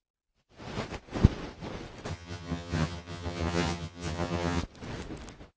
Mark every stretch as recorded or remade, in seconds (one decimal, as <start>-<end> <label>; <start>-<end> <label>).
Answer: 0.0-2.1 recorded; 2.1-4.6 remade; 4.6-5.6 recorded